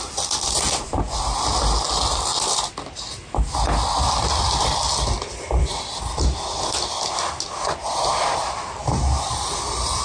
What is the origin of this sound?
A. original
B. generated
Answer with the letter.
A